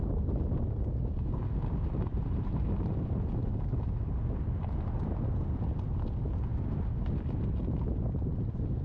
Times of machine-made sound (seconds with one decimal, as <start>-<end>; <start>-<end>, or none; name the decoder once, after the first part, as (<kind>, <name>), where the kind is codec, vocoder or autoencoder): 2.1-2.6 (vocoder, BigVGAN v2); 6.5-7.1